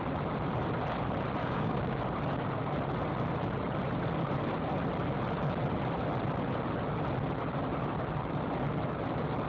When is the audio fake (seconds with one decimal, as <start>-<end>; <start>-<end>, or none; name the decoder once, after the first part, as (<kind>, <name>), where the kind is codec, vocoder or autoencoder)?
1.4-2.0 (codec, DAC)